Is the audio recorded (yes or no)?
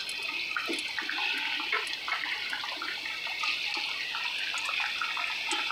yes